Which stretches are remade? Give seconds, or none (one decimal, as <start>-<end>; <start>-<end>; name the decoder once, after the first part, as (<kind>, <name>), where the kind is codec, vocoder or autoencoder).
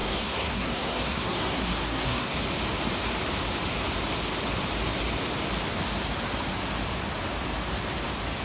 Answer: 0.0-2.4 (codec, SNAC)